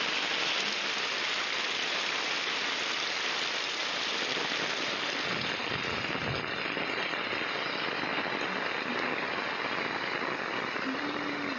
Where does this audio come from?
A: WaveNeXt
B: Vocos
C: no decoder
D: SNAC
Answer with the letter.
C